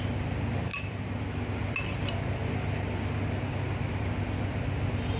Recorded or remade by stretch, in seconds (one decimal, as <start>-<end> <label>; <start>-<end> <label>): 0.0-5.2 recorded